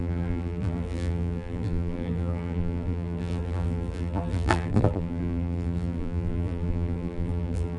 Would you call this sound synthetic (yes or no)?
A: yes